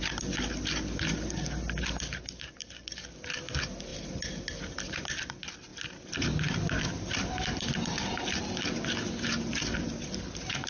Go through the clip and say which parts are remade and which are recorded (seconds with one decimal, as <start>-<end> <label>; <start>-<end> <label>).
0.0-3.9 remade; 3.9-5.0 recorded; 5.0-5.7 remade; 5.7-6.4 recorded; 6.4-10.7 remade